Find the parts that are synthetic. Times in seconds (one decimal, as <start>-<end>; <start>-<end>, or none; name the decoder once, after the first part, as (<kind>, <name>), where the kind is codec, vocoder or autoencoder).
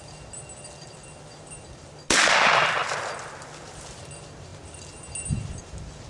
none